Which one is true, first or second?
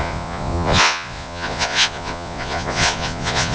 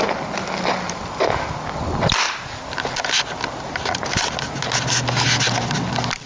second